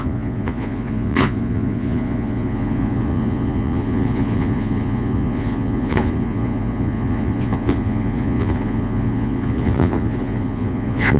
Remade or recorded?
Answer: remade